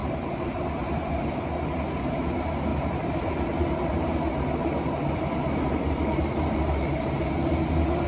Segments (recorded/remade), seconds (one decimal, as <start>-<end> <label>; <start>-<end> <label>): 0.0-1.2 remade; 1.2-2.7 recorded; 2.7-7.2 remade; 7.2-8.1 recorded